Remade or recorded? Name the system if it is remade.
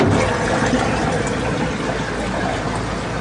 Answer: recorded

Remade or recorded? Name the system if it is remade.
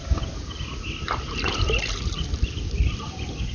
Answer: recorded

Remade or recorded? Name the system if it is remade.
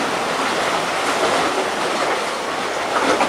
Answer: recorded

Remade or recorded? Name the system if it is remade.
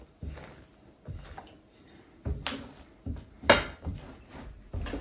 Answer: recorded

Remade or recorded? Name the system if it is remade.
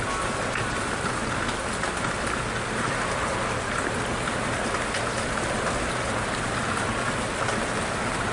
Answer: recorded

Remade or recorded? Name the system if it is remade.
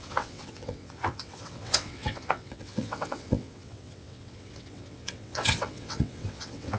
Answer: remade, vocoder, WaveNeXt